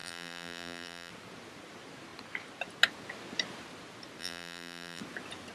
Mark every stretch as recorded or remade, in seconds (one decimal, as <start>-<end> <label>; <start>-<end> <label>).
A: 0.0-1.1 remade; 1.1-4.2 recorded; 4.2-5.0 remade; 5.0-5.5 recorded